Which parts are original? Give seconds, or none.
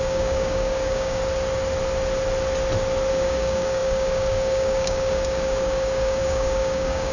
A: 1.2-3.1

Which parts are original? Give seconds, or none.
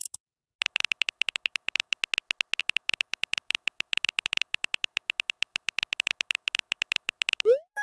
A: 2.0-2.6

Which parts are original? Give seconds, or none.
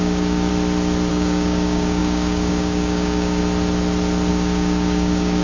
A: 0.5-1.1; 3.4-4.3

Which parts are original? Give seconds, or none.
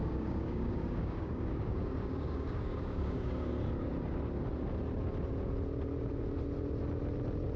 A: 3.5-7.6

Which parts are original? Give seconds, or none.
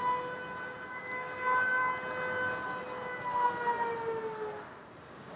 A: 0.0-0.9; 1.8-5.0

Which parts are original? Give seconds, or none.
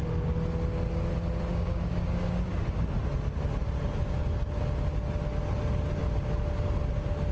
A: 0.0-1.5; 2.5-7.3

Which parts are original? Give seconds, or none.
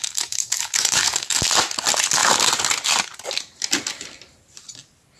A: 1.5-5.2